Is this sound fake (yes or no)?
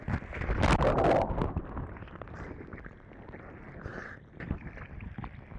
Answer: no